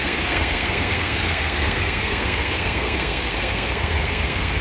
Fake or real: fake